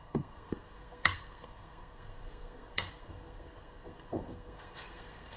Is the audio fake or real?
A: fake